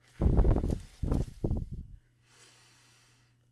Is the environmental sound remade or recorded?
recorded